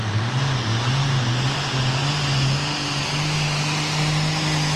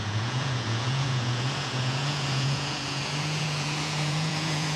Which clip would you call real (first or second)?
first